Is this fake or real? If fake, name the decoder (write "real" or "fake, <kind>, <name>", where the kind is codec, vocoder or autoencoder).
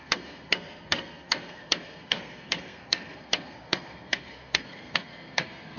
fake, codec, SNAC